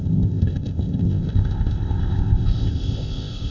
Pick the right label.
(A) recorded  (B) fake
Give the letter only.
B